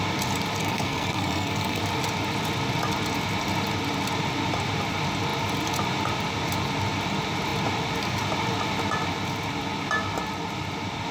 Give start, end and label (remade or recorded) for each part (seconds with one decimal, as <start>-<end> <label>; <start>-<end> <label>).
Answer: 0.0-0.6 recorded; 0.6-1.8 remade; 1.8-11.1 recorded